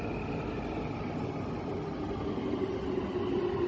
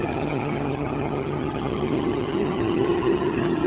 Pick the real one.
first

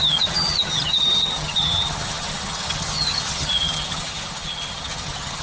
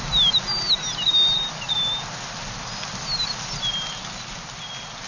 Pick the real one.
second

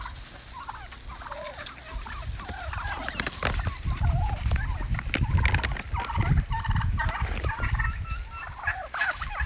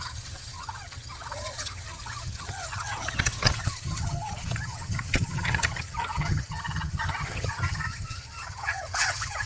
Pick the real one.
first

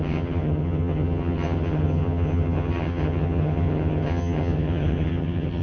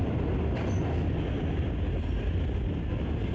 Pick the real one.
second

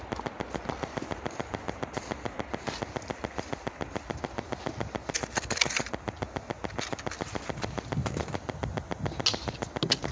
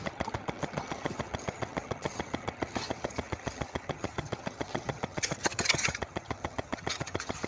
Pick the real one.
first